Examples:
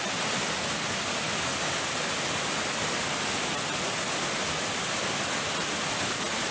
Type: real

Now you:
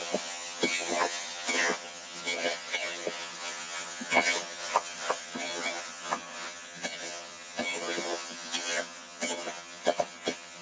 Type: fake